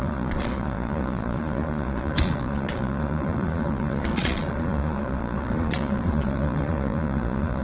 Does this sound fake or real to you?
fake